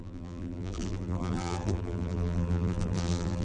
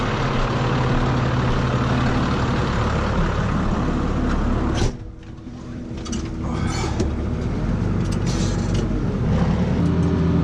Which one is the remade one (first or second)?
first